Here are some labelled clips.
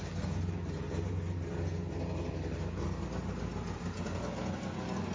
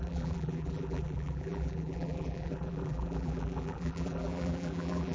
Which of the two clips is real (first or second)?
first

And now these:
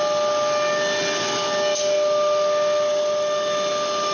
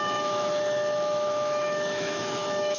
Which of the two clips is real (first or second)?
first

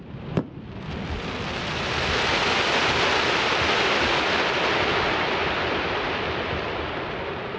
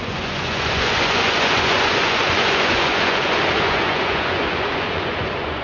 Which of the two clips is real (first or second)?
first